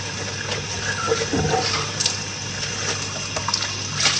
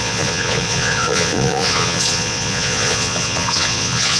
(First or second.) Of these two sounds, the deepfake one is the second